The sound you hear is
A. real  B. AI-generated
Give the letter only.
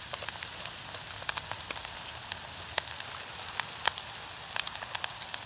A